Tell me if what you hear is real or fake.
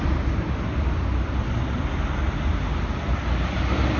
real